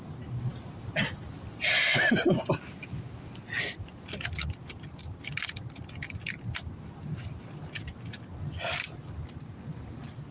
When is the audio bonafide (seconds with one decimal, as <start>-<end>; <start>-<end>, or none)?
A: 0.0-10.3